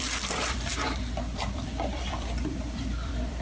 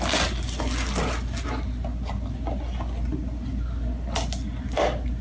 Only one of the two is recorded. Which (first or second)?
second